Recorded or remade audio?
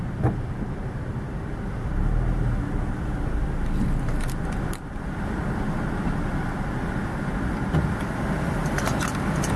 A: recorded